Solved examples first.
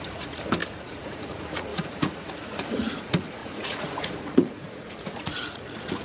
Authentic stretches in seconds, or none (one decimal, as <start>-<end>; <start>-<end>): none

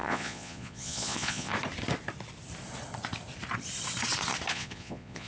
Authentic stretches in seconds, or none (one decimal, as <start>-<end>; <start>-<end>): 1.5-4.5

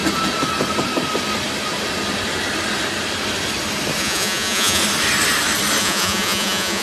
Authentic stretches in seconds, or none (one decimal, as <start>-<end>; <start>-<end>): 0.0-4.0; 4.8-5.8